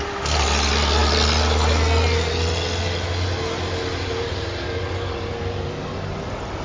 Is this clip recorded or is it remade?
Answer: recorded